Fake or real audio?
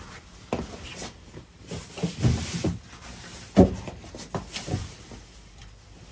real